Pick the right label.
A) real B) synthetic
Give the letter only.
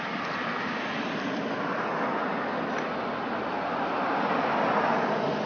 A